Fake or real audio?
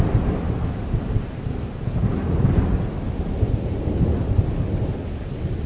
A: real